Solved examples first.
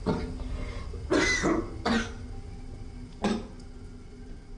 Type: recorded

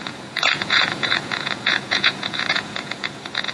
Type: remade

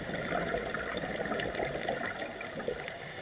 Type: recorded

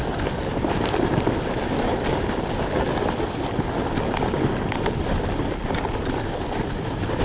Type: recorded